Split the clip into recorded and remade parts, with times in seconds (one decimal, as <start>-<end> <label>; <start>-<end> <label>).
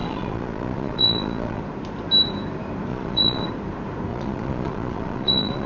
0.0-1.6 remade; 1.6-2.9 recorded; 2.9-3.5 remade; 3.5-4.1 recorded; 4.1-5.7 remade